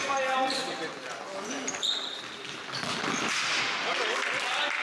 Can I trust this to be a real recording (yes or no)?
yes